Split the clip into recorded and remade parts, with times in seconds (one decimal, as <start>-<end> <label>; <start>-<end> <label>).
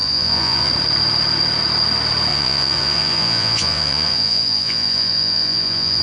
0.0-0.7 remade; 0.7-2.3 recorded; 2.3-6.0 remade